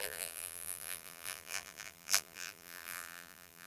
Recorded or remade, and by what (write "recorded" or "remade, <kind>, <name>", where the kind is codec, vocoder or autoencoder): remade, vocoder, BigVGAN v2